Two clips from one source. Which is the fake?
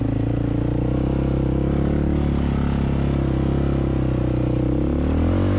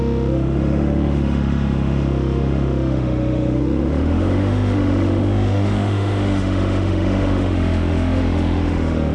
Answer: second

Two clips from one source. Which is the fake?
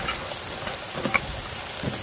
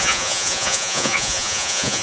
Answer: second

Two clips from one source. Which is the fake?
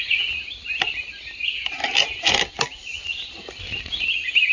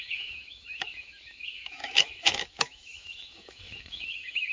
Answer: second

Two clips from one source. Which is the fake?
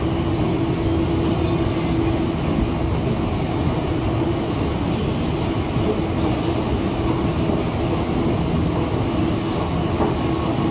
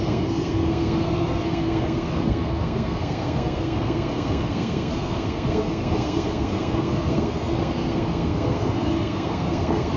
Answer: second